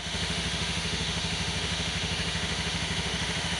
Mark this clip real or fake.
fake